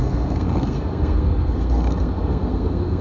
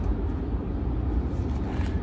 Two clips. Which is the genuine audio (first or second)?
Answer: second